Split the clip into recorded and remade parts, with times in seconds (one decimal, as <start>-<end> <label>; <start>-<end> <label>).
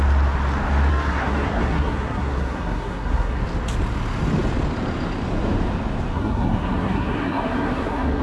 0.0-0.9 recorded; 0.9-3.4 remade; 3.4-6.1 recorded; 6.1-8.2 remade